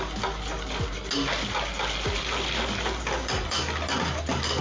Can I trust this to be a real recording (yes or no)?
yes